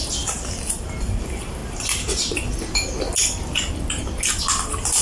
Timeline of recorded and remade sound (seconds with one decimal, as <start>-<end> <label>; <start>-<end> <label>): 0.0-5.0 recorded